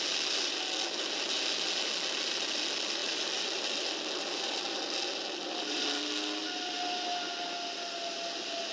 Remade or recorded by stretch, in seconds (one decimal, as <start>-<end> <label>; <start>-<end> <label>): 0.0-3.0 recorded; 3.0-5.8 remade; 5.8-8.7 recorded